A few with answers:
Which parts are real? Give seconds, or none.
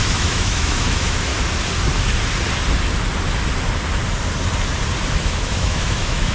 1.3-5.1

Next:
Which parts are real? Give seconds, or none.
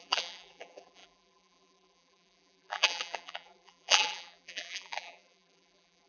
none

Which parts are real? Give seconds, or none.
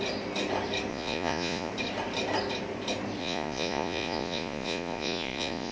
0.0-0.9; 1.7-3.2